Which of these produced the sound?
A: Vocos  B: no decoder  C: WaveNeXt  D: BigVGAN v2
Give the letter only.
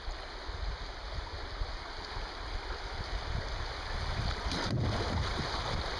B